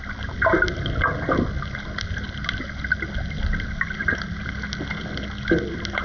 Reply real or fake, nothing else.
real